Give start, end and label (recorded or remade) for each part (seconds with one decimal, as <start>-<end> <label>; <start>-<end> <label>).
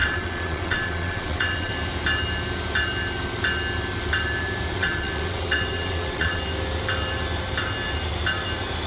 0.0-1.7 remade; 1.7-4.7 recorded; 4.7-6.4 remade; 6.4-8.9 recorded